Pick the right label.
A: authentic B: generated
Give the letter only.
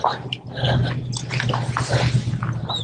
A